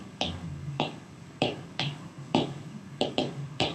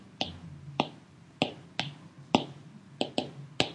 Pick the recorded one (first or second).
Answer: second